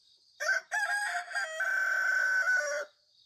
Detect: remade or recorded recorded